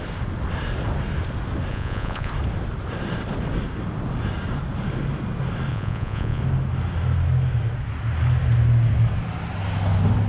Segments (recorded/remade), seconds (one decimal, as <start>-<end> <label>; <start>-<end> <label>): 0.0-1.7 recorded; 1.7-2.3 remade; 2.3-5.7 recorded; 5.7-6.4 remade; 6.4-10.3 recorded